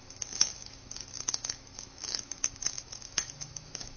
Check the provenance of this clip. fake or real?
fake